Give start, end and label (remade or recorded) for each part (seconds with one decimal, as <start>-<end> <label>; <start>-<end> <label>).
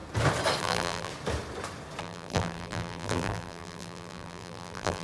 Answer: 0.0-0.6 recorded; 0.6-1.1 remade; 1.1-2.0 recorded; 2.0-5.0 remade